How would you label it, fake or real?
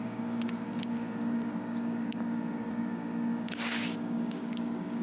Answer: fake